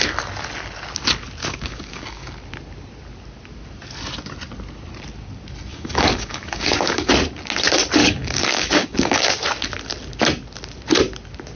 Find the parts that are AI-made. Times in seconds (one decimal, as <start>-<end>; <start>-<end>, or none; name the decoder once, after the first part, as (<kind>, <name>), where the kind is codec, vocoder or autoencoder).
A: 1.4-2.3 (codec, DAC); 5.7-7.1; 8.0-9.3